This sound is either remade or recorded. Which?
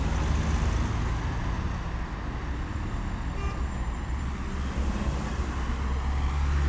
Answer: recorded